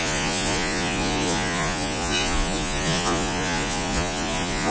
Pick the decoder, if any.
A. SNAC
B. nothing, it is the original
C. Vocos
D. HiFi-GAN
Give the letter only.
C